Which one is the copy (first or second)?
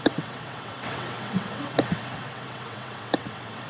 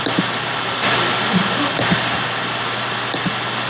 first